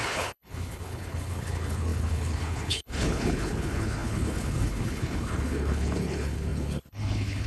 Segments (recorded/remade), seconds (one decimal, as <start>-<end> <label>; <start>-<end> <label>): 0.0-7.5 remade